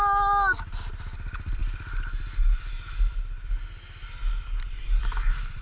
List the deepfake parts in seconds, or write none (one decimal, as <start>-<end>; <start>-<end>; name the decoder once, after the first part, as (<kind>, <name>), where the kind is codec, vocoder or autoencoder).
none